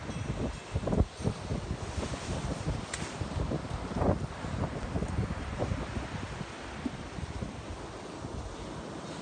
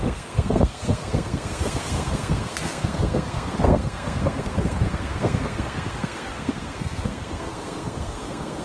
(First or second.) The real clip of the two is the first